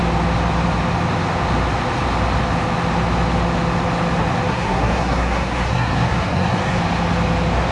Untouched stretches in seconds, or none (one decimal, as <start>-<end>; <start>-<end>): 0.0-4.5; 6.8-7.7